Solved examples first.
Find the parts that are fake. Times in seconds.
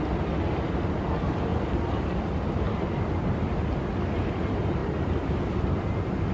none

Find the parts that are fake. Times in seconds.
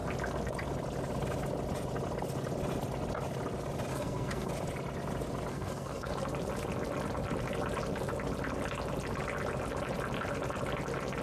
3.9-4.5; 5.5-6.1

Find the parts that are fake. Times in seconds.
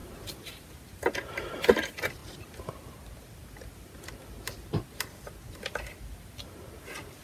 0.0-0.7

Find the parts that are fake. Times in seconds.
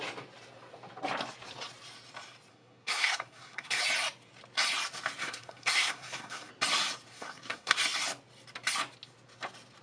2.5-3.8; 5.2-6.5; 7.1-7.8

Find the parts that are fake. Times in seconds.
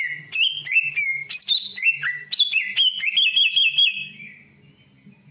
none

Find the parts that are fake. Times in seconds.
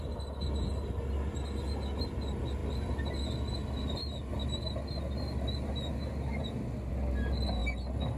none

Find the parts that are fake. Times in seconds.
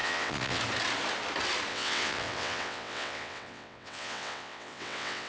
0.0-0.6; 1.7-5.3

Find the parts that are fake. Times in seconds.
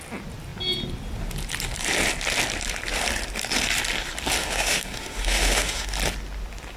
4.4-5.9